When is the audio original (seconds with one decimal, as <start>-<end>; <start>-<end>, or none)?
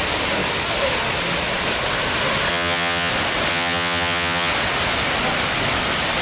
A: 0.0-2.5; 3.1-3.5; 4.5-6.2